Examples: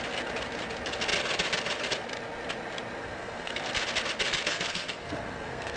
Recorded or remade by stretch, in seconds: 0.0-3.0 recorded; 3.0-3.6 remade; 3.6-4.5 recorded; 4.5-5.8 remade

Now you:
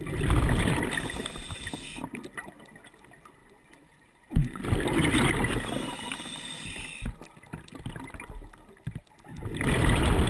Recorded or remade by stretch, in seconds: 0.0-3.4 recorded; 3.4-4.6 remade; 4.6-10.3 recorded